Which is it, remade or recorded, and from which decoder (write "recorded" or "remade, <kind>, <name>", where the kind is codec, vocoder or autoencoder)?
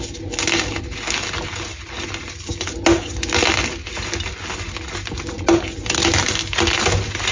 recorded